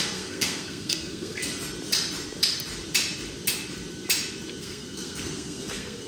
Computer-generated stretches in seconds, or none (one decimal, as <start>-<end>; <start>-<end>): 0.0-1.4; 4.6-6.1